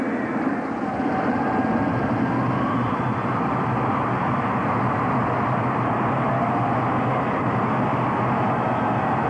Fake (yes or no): no